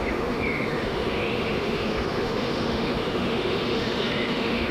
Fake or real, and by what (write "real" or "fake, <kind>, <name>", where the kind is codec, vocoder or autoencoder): fake, autoencoder, DAC-VAE